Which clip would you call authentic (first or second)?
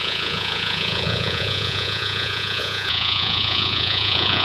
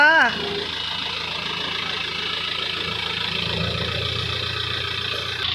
second